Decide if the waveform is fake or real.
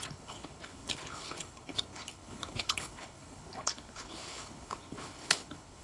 fake